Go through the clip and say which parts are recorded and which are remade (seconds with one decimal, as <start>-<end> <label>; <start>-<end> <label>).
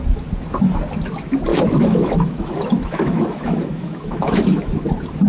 0.0-1.5 recorded; 1.5-4.7 remade; 4.7-5.3 recorded